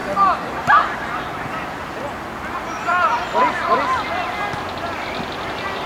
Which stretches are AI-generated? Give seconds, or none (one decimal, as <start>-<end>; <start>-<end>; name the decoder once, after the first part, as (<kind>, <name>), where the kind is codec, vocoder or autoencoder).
none